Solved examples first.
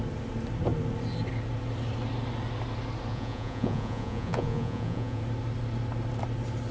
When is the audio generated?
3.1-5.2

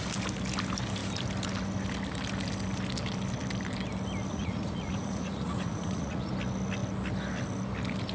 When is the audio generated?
4.3-6.3

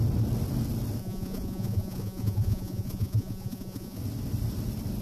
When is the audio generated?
1.0-4.0

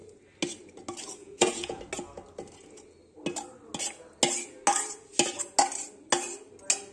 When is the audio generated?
1.2-1.8